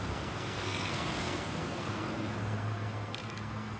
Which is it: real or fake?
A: fake